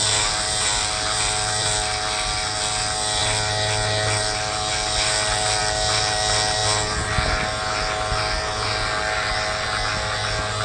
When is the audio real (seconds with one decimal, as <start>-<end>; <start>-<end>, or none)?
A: 0.0-10.6